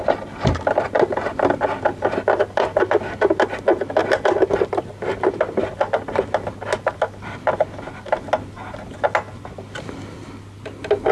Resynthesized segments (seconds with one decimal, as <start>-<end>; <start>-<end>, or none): none